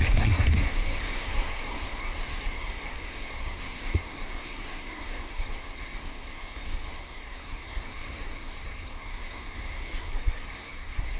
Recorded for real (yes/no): no